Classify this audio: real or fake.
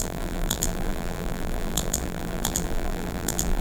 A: fake